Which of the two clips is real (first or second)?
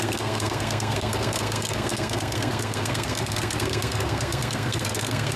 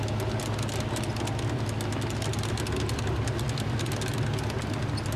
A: second